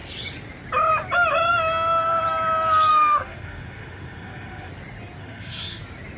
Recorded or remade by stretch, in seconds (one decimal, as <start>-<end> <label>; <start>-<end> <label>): 0.0-2.9 recorded; 2.9-4.7 remade; 4.7-5.2 recorded; 5.2-5.8 remade; 5.8-6.2 recorded